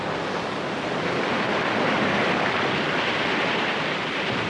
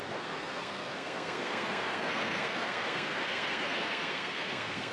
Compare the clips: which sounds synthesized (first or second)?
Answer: second